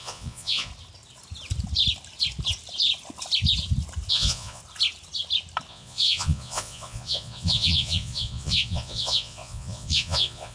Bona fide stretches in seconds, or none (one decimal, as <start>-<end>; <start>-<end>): 0.7-4.1; 4.6-5.7